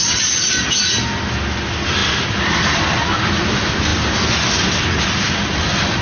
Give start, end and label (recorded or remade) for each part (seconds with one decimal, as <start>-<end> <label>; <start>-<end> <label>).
0.0-6.0 recorded

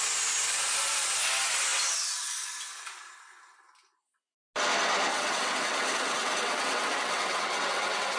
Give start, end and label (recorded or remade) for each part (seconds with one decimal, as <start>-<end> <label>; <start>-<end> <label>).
0.0-5.1 recorded; 5.1-8.2 remade